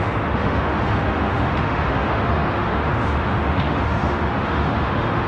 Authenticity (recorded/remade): remade